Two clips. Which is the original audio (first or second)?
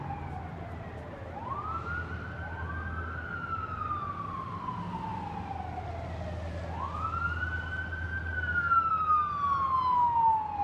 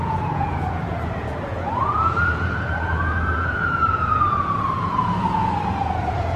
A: first